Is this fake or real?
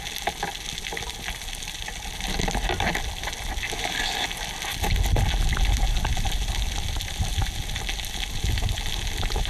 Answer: real